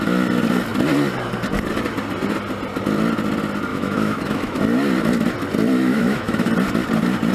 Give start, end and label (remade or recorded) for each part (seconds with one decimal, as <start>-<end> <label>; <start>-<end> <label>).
0.0-3.7 recorded; 3.7-4.6 remade; 4.6-5.9 recorded; 5.9-6.5 remade; 6.5-7.3 recorded